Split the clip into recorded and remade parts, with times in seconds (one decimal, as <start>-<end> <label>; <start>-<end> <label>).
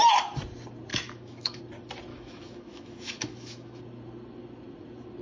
0.0-0.9 recorded; 0.9-1.6 remade; 1.6-2.1 recorded; 2.1-3.8 remade; 3.8-5.2 recorded